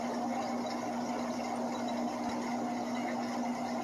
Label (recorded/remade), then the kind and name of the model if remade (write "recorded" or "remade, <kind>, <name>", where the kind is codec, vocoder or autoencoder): recorded